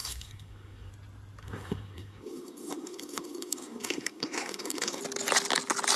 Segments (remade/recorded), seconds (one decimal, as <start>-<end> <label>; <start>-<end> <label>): 0.0-0.9 remade; 0.9-1.4 recorded; 1.4-5.0 remade; 5.0-6.0 recorded